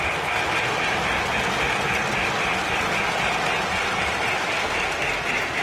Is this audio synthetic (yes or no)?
no